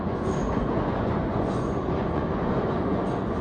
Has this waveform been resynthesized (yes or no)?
yes